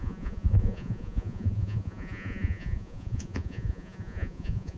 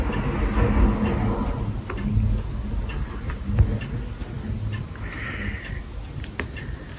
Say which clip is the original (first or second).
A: second